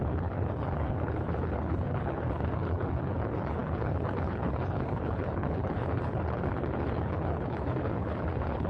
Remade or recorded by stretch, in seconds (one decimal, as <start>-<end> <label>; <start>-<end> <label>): 0.0-8.7 remade